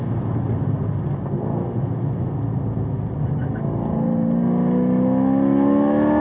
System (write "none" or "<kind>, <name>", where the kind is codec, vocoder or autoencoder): none